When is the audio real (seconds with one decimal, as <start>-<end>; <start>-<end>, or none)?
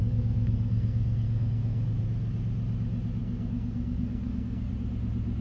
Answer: 2.0-3.2; 4.7-5.4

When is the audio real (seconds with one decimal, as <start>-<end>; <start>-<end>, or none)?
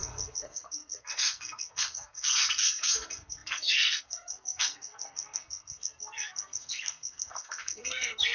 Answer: none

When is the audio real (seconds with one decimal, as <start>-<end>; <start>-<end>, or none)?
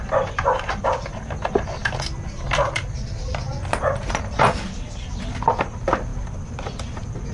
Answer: 0.0-7.3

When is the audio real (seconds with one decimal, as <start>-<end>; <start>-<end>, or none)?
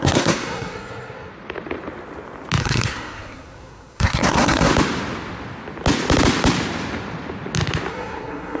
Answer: 1.3-2.6; 4.7-7.9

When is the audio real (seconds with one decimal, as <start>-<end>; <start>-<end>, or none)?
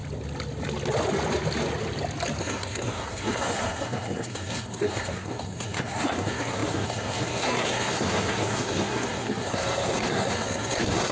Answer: 0.0-2.4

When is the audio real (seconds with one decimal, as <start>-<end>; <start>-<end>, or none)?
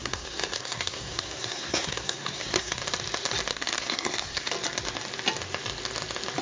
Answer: 2.8-3.5; 4.5-6.4